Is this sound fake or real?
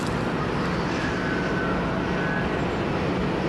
real